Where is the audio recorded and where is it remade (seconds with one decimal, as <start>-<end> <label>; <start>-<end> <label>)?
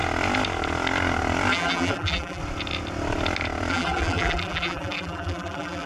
0.0-1.5 recorded; 1.5-2.4 remade; 2.4-3.7 recorded; 3.7-5.9 remade